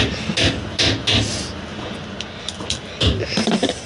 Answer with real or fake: real